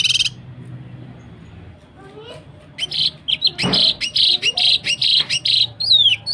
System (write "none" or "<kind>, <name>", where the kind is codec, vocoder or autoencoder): none